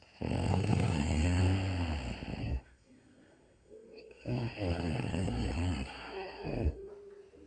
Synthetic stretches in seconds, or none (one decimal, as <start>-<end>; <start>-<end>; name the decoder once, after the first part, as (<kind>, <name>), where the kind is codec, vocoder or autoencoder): 0.5-1.4 (codec, SNAC); 2.4-6.9